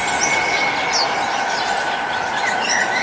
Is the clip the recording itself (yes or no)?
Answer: yes